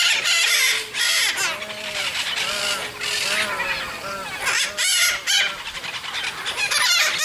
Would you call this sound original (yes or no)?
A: yes